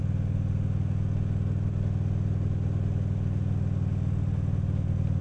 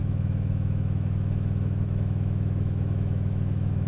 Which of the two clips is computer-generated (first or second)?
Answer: second